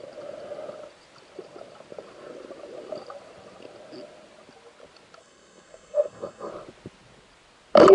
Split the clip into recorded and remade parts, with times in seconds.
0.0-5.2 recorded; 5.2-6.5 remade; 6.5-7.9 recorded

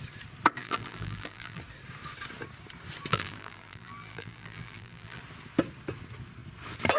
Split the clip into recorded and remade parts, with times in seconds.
0.0-0.6 recorded; 0.6-1.6 remade; 1.6-3.1 recorded; 3.1-5.2 remade; 5.2-7.0 recorded

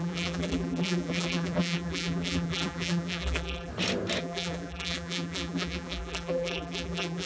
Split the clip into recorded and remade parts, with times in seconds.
0.0-3.7 remade; 3.7-4.2 recorded; 4.2-7.3 remade

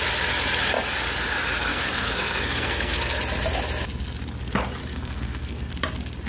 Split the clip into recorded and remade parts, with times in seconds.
0.0-1.7 recorded; 1.7-3.2 remade; 3.2-4.8 recorded; 4.8-5.7 remade; 5.7-6.3 recorded

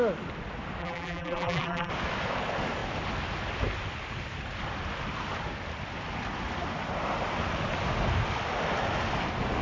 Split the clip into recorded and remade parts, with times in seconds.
0.0-0.8 recorded; 0.8-1.9 remade; 1.9-9.6 recorded

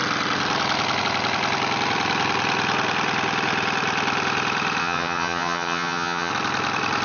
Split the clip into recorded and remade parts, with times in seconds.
0.0-4.8 recorded; 4.8-6.3 remade; 6.3-7.0 recorded

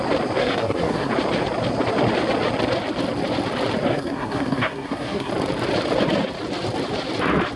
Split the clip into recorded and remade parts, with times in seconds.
0.0-0.4 recorded; 0.4-1.1 remade; 1.1-3.9 recorded; 3.9-5.3 remade; 5.3-7.6 recorded